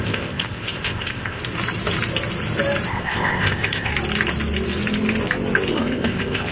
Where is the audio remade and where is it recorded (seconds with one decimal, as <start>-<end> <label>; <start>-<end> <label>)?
0.0-1.4 remade; 1.4-2.9 recorded; 2.9-3.9 remade; 3.9-5.7 recorded; 5.7-6.5 remade